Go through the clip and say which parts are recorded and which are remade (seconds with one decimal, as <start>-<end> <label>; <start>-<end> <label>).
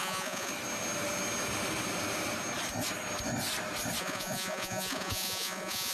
0.0-0.5 remade; 0.5-4.0 recorded; 4.0-5.9 remade